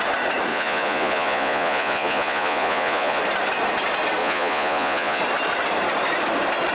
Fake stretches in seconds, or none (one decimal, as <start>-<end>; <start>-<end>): 0.5-3.2; 4.2-5.2

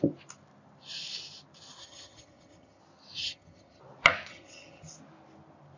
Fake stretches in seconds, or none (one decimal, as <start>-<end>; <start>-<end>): 1.8-2.8; 3.2-3.8; 4.3-4.9

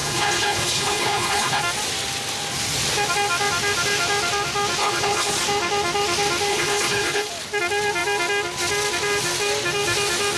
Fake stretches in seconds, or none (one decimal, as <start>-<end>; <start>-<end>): 0.0-1.6; 4.8-5.3; 6.5-7.3